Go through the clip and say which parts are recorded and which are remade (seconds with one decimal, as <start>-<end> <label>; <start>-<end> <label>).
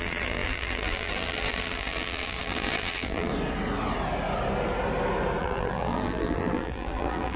0.0-3.3 remade; 3.3-5.4 recorded; 5.4-7.4 remade